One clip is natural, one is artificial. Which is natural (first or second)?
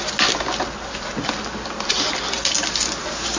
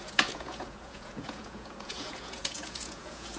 first